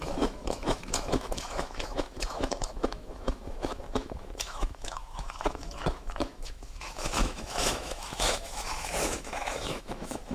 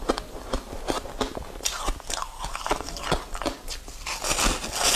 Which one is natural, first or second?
second